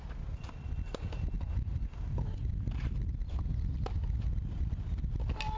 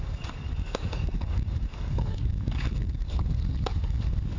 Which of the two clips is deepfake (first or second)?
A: second